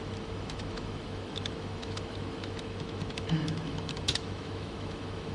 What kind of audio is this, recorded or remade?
remade